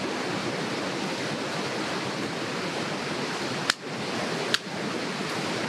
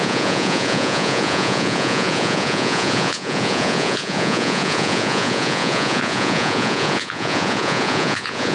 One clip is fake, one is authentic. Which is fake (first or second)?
second